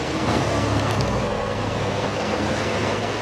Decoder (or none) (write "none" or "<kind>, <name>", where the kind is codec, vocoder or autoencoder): codec, SNAC